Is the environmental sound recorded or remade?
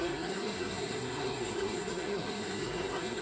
remade